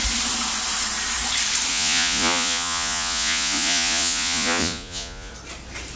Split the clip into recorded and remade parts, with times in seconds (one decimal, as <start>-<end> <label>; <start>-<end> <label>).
0.0-1.7 recorded; 1.7-5.3 remade; 5.3-6.0 recorded